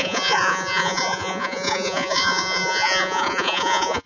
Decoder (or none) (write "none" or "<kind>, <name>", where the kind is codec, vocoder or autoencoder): vocoder, Vocos